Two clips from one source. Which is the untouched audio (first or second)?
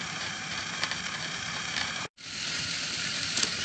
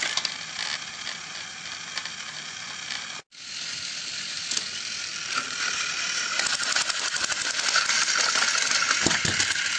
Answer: second